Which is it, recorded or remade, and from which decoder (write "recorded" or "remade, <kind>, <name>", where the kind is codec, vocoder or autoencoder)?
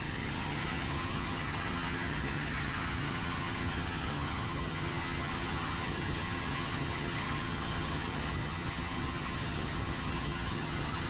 remade, vocoder, HiFi-GAN